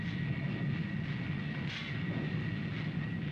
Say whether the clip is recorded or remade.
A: recorded